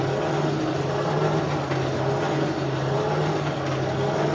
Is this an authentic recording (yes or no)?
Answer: yes